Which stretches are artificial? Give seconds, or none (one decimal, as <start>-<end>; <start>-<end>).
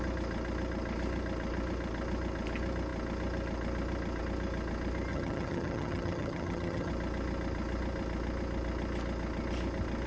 5.1-6.9